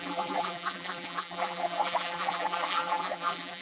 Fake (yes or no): yes